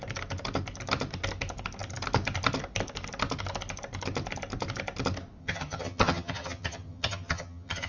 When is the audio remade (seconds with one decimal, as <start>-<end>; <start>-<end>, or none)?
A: 5.4-7.9